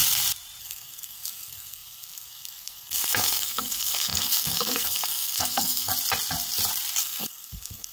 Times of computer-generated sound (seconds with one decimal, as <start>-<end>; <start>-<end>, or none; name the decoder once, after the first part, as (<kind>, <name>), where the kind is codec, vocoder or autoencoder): 0.6-5.9 (codec, SNAC); 7.0-7.9